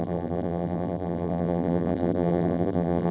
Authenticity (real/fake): fake